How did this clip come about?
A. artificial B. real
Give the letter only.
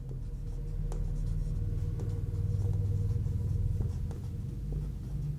B